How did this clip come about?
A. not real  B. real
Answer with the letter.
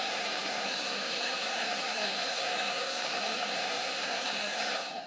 A